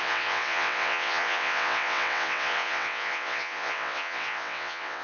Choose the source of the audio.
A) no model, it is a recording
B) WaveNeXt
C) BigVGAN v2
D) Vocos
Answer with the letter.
B